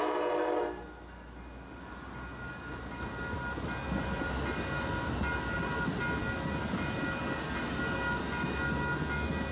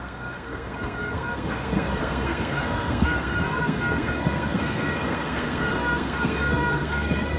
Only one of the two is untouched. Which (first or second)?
first